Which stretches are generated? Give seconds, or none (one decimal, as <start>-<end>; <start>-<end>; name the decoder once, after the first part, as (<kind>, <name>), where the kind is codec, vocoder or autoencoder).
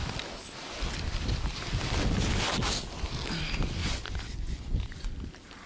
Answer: 3.8-5.1 (vocoder, Vocos)